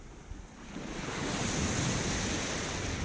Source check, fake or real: real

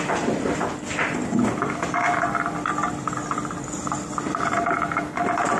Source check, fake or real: real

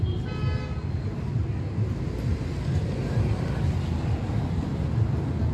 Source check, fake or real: real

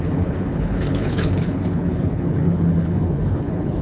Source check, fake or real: fake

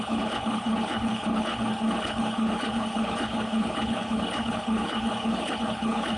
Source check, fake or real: fake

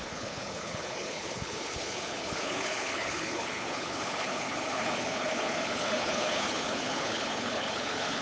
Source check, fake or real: fake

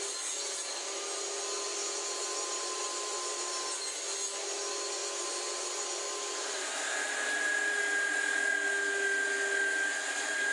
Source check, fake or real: real